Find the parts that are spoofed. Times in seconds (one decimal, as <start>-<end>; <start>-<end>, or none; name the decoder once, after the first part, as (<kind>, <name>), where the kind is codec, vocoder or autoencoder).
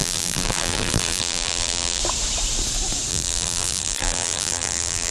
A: 0.0-2.0 (vocoder, BigVGAN v2); 3.1-5.1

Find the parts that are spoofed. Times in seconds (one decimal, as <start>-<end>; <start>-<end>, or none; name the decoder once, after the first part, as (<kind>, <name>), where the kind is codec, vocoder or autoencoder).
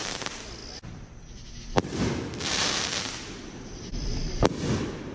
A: none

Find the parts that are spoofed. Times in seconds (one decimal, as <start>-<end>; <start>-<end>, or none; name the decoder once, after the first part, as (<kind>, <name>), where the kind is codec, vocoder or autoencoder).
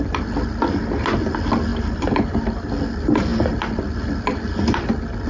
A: 1.7-2.4 (vocoder, BigVGAN v2)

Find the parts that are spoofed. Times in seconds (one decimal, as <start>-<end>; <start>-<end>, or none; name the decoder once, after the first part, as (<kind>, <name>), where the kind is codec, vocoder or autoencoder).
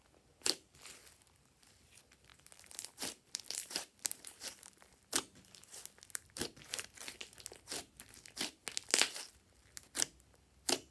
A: 2.3-7.1 (vocoder, BigVGAN v2)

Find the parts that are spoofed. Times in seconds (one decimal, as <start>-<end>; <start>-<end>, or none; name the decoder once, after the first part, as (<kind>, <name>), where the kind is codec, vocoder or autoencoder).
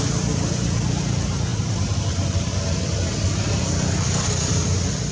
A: 0.0-5.1 (vocoder, BigVGAN v2)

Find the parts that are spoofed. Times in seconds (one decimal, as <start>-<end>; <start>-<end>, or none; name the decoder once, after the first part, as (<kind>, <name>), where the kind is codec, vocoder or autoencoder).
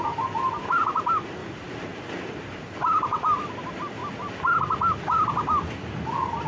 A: 1.4-2.0 (vocoder, BigVGAN v2)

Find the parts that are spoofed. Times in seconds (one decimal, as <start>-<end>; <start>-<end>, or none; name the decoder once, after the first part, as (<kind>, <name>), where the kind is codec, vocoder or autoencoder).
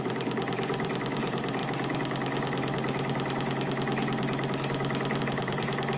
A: 0.0-1.6 (vocoder, BigVGAN v2); 5.2-6.0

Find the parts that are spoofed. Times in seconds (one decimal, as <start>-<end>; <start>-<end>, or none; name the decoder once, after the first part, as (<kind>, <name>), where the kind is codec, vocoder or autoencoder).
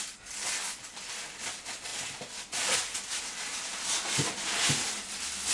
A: none